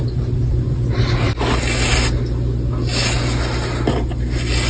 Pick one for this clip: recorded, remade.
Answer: recorded